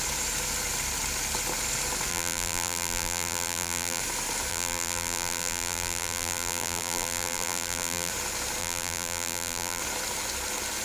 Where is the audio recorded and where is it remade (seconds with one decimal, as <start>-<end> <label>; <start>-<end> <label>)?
0.0-2.1 recorded; 2.1-4.0 remade; 4.0-4.5 recorded; 4.5-8.1 remade; 8.1-8.6 recorded; 8.6-9.8 remade; 9.8-10.8 recorded